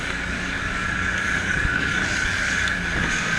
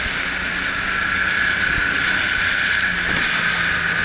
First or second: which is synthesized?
first